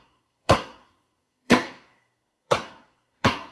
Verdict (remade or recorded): remade